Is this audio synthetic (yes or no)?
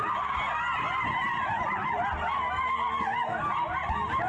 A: no